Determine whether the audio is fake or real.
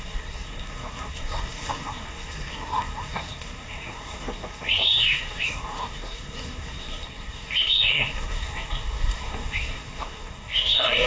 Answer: fake